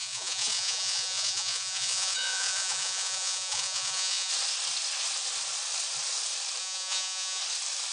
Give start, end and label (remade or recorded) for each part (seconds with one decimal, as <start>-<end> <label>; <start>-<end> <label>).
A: 0.0-4.3 remade; 4.3-6.6 recorded; 6.6-7.4 remade; 7.4-7.9 recorded